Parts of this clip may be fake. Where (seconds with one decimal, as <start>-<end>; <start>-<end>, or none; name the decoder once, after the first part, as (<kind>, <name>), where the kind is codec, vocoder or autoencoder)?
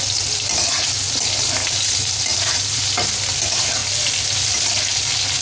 1.6-2.8 (vocoder, BigVGAN v2)